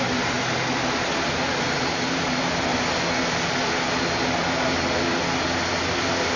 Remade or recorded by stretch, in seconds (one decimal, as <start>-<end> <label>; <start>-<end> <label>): 0.0-6.4 recorded